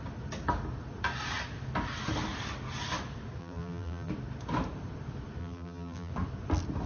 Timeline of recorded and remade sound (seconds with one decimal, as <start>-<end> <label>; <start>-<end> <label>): 0.0-3.4 recorded; 3.4-4.1 remade; 4.1-5.4 recorded; 5.4-6.1 remade; 6.1-6.9 recorded